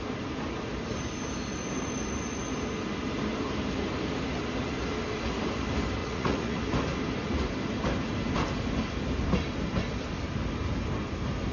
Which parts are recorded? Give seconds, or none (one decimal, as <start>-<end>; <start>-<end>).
0.0-6.0; 6.6-11.5

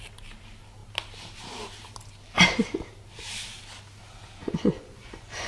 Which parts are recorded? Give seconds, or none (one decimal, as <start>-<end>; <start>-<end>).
0.0-4.4

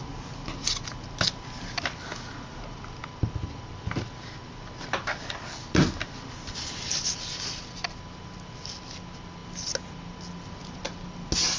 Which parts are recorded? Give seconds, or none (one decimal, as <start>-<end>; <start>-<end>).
0.0-11.6

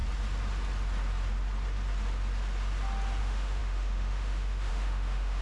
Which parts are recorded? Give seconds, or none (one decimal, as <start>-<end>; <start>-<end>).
0.0-3.2

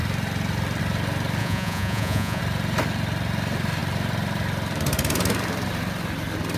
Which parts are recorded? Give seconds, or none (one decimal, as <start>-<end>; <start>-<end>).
0.0-1.4; 2.4-6.6